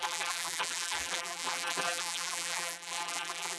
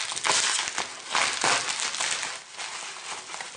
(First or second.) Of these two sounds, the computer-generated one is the first